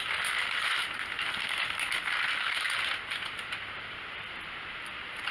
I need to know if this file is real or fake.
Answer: real